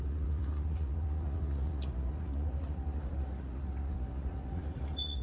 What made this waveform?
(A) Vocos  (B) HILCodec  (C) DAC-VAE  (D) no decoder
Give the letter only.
A